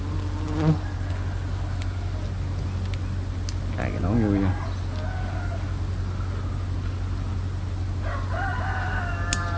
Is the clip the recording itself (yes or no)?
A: yes